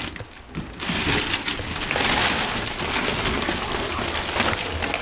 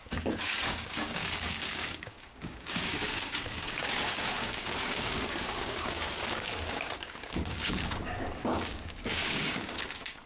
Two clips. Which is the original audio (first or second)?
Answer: first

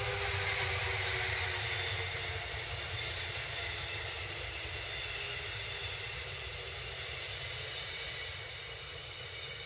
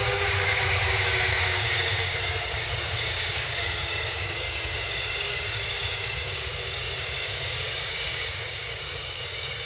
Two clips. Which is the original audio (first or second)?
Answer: first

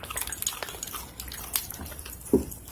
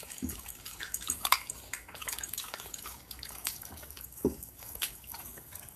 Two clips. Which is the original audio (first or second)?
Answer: first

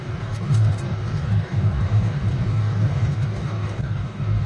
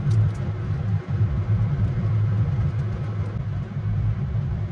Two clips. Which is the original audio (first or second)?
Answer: second